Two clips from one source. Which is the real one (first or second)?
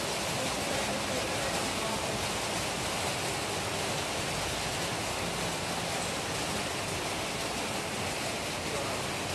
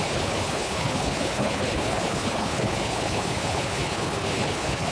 first